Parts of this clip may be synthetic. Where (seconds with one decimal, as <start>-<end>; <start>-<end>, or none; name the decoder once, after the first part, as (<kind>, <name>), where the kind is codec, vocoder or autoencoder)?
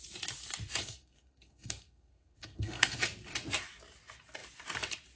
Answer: 0.8-3.0 (codec, SNAC)